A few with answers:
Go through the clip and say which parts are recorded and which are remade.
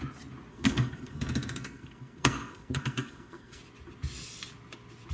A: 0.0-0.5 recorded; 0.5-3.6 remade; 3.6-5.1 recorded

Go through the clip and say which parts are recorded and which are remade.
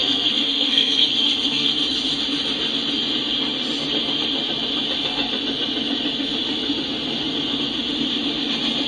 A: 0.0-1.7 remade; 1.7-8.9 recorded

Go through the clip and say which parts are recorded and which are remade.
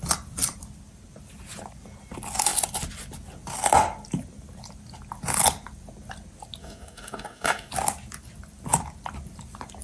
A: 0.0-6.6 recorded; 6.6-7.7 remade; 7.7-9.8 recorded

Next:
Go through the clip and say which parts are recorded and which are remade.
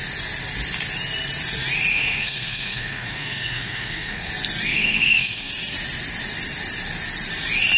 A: 0.0-1.9 recorded; 1.9-4.3 remade; 4.3-4.7 recorded; 4.7-5.5 remade; 5.5-7.8 recorded